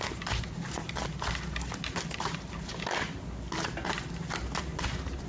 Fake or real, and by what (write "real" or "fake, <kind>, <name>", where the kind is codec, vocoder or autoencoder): real